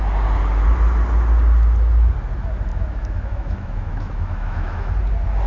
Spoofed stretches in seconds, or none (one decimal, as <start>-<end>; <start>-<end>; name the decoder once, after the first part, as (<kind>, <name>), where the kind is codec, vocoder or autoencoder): 2.7-4.9 (autoencoder, DAC-VAE)

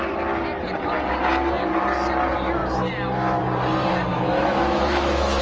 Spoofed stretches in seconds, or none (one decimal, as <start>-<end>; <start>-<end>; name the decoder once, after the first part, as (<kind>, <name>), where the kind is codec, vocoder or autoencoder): 4.1-5.4 (autoencoder, DAC-VAE)

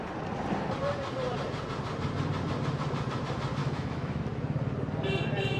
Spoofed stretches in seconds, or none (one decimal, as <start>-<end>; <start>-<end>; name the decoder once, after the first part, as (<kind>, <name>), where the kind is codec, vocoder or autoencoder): 3.6-4.2 (autoencoder, DAC-VAE)

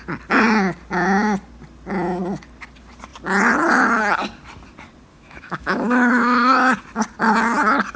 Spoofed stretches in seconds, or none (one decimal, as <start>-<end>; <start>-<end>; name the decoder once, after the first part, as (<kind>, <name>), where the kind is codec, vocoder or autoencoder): 5.1-6.8 (autoencoder, DAC-VAE)

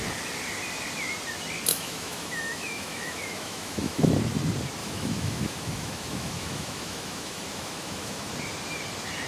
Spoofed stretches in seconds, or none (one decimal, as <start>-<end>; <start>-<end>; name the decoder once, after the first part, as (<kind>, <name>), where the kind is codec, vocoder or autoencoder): 1.7-4.1 (autoencoder, DAC-VAE); 4.8-8.3